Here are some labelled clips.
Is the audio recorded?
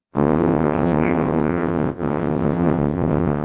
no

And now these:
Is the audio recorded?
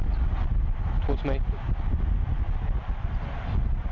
yes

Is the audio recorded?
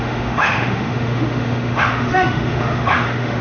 no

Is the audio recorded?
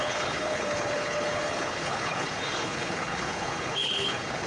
no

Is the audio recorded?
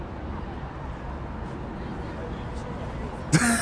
yes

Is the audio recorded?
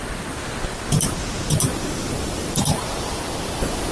yes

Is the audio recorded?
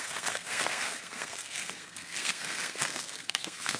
no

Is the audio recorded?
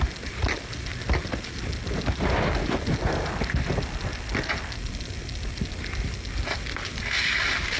yes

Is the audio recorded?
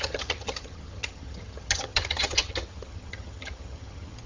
no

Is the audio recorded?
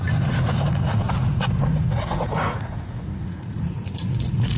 no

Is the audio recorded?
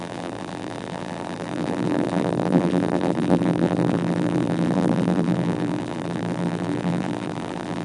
no